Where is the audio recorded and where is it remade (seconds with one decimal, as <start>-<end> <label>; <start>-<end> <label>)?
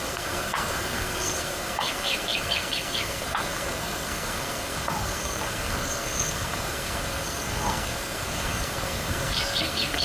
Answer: 0.0-10.0 remade